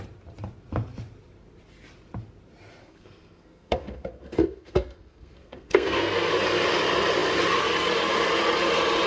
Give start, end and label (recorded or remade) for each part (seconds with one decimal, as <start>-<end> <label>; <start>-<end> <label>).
0.0-2.8 recorded; 2.8-6.3 remade; 6.3-9.1 recorded